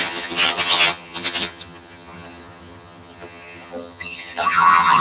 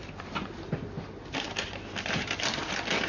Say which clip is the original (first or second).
second